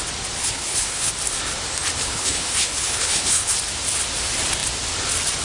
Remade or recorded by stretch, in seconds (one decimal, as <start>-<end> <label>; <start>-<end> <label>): 0.0-0.4 recorded; 0.4-1.1 remade; 1.1-2.0 recorded; 2.0-3.5 remade; 3.5-5.4 recorded